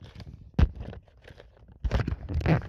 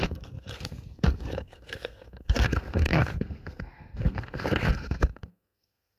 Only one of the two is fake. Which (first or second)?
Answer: second